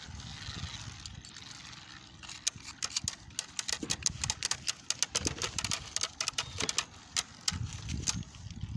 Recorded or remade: recorded